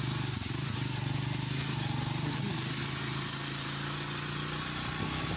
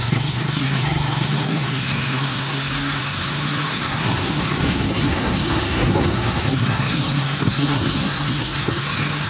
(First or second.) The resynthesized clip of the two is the second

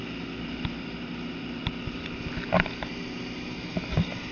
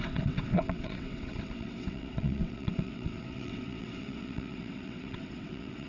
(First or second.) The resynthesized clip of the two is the second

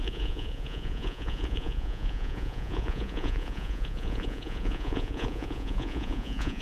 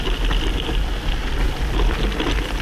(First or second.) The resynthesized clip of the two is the first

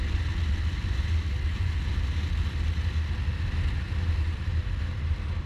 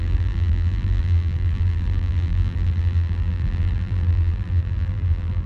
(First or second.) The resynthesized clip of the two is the second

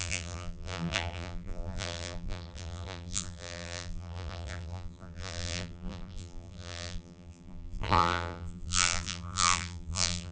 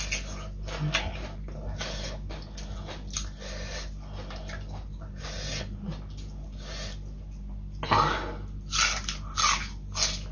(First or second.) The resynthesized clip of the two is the first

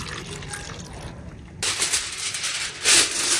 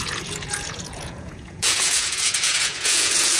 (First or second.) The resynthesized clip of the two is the second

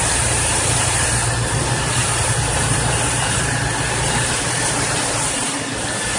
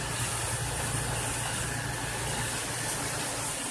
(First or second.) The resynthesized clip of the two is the first